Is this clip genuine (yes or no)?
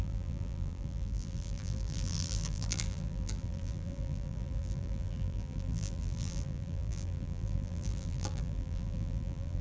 no